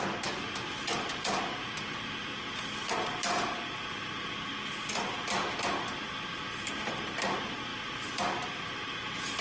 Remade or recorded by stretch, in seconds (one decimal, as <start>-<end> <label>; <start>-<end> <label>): 0.0-9.4 recorded